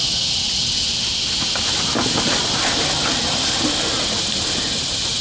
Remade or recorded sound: recorded